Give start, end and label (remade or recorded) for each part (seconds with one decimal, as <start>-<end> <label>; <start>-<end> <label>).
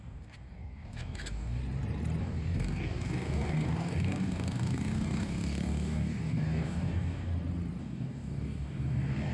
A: 0.0-1.6 remade; 1.6-2.2 recorded; 2.2-7.3 remade; 7.3-7.8 recorded; 7.8-9.3 remade